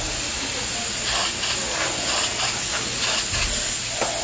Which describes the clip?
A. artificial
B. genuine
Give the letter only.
B